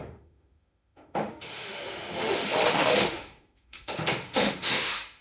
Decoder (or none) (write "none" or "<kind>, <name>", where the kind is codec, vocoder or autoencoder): autoencoder, DAC-VAE